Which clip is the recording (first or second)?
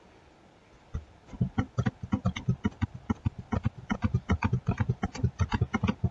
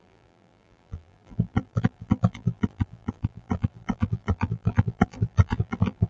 first